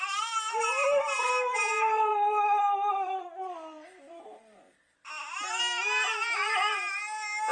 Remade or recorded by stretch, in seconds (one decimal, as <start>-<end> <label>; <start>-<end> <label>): 0.0-2.1 recorded; 2.1-5.6 remade; 5.6-7.5 recorded